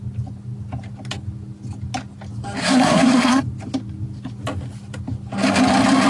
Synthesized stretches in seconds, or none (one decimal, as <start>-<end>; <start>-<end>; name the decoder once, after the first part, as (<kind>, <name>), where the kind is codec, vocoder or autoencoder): 2.6-3.4 (codec, SNAC)